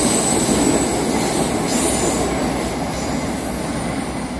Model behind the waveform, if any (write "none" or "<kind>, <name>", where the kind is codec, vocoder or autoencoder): none